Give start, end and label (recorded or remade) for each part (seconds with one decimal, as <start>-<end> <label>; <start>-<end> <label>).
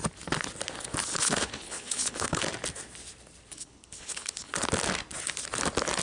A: 0.0-1.1 recorded; 1.1-2.4 remade; 2.4-3.5 recorded; 3.5-4.5 remade; 4.5-6.0 recorded